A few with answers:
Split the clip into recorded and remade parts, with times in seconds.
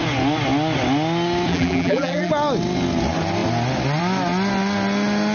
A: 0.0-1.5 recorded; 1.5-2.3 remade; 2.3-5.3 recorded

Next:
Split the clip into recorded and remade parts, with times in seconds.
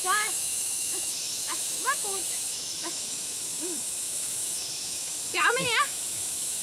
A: 0.0-6.6 remade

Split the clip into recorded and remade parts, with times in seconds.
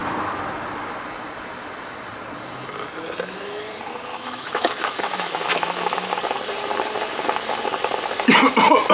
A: 0.0-4.1 recorded; 4.1-6.2 remade; 6.2-8.9 recorded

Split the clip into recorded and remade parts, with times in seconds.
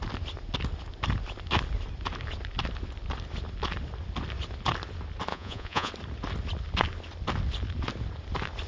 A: 0.0-5.3 recorded; 5.3-5.9 remade; 5.9-8.7 recorded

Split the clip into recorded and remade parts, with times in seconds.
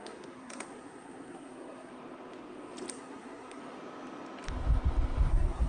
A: 0.0-1.9 remade; 1.9-2.9 recorded; 2.9-3.6 remade; 3.6-5.3 recorded; 5.3-5.7 remade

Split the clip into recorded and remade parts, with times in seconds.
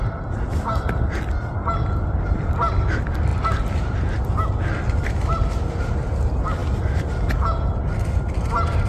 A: 0.0-8.9 recorded